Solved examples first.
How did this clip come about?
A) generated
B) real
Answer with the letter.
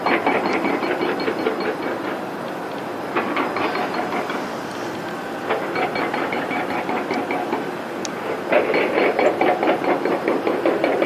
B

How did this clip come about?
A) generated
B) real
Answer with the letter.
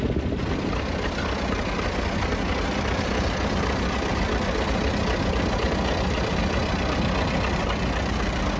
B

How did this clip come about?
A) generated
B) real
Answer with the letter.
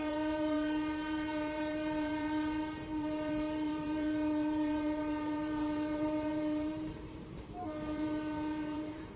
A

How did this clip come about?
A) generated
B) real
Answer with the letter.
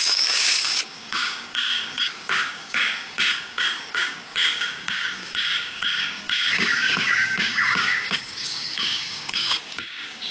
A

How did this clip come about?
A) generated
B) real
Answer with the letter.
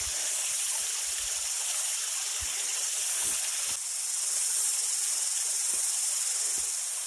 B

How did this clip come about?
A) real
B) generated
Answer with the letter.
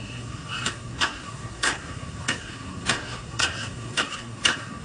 B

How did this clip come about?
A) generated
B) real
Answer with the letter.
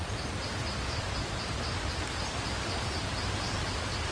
B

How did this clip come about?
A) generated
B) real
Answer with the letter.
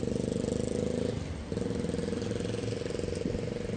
B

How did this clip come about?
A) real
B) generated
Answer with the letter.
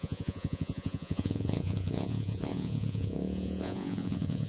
B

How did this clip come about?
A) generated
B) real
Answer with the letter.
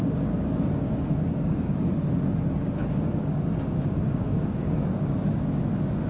A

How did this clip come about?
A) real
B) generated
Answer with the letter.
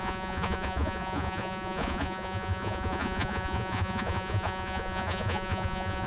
B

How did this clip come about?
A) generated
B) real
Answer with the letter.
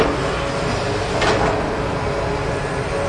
B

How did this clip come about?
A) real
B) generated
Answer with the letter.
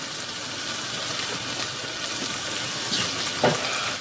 A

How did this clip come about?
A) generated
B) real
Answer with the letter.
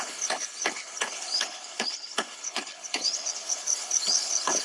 A